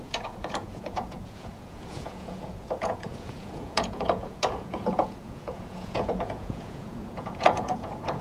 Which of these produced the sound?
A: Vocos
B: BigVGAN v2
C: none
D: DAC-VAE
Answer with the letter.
A